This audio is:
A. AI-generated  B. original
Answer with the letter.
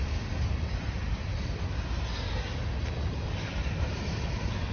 A